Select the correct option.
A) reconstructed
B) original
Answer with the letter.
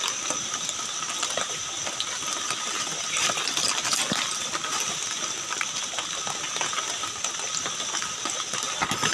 B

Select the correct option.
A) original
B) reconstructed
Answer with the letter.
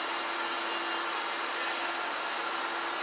A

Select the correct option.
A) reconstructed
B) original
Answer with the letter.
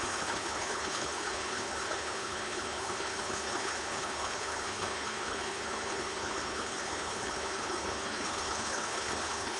A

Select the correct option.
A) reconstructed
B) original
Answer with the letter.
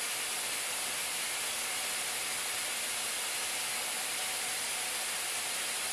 B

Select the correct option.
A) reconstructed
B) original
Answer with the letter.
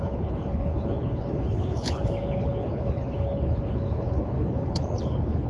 A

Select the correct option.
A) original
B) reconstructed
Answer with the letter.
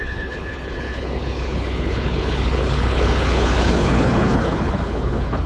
B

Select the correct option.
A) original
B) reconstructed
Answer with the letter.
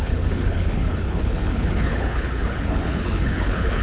B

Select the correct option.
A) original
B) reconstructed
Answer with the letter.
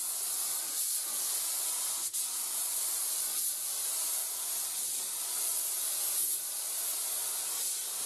A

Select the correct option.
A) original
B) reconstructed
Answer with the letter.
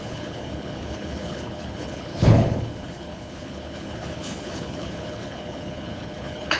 B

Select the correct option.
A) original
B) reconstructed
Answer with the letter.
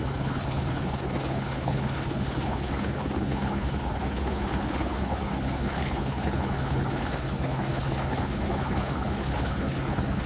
B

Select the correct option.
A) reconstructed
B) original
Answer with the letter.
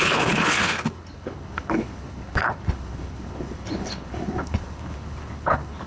A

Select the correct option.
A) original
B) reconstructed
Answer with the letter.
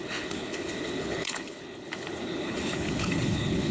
B